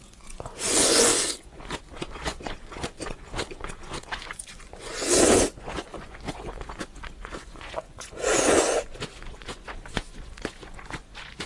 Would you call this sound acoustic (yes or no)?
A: no